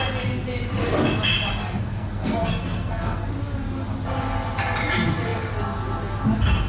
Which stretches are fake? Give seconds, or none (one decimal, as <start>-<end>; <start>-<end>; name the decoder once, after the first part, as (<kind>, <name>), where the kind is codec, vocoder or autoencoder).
1.6-3.3 (codec, SNAC)